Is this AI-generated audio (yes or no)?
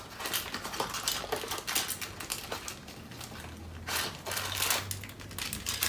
no